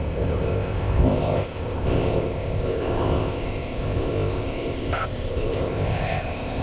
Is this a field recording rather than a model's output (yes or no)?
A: no